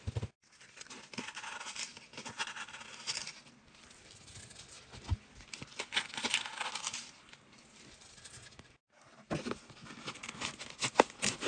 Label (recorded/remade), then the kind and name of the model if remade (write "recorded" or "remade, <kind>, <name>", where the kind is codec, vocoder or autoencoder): recorded